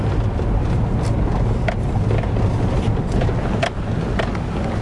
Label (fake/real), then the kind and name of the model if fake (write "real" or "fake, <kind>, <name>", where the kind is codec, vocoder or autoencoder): real